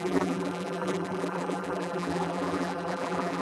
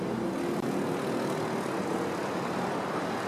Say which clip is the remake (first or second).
first